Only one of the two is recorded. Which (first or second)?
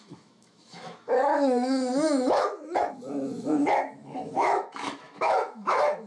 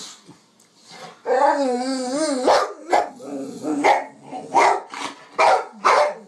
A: second